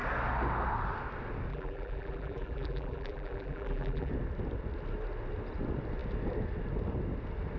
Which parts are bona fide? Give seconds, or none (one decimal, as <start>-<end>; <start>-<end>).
0.0-1.5; 4.1-7.6